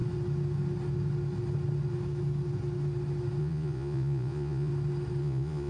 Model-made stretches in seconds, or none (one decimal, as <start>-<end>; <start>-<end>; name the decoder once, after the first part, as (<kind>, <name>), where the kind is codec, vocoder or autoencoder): 3.4-4.7 (vocoder, Vocos); 5.2-5.7